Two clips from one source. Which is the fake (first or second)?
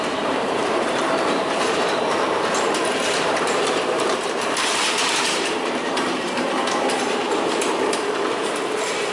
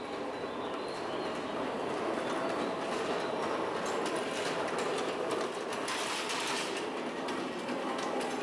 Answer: first